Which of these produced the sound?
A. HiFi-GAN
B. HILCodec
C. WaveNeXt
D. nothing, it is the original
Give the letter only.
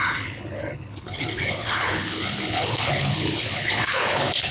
B